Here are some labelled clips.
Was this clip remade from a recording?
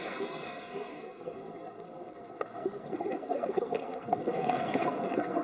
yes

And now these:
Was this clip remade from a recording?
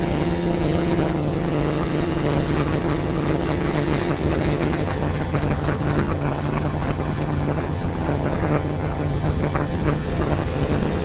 yes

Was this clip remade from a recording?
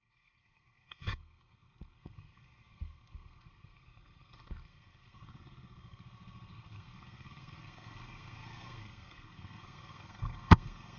yes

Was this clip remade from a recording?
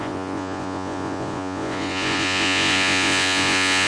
yes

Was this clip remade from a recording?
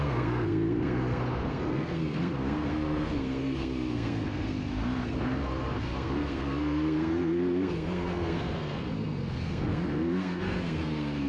yes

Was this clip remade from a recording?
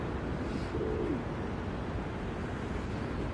no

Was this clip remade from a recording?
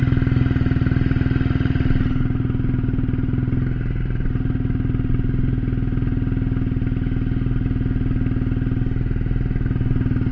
no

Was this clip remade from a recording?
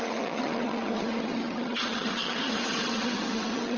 yes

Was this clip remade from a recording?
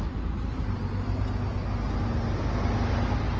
no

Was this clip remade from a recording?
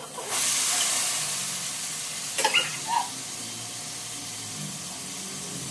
no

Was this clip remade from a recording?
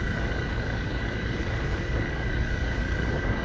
yes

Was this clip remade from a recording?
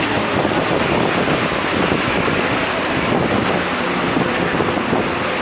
no